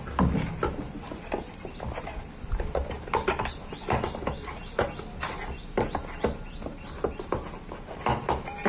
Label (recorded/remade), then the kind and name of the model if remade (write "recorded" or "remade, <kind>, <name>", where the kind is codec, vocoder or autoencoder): recorded